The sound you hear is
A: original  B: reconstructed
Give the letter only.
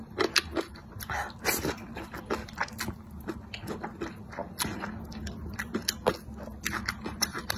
A